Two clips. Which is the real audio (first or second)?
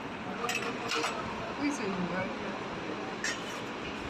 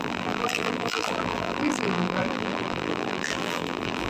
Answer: first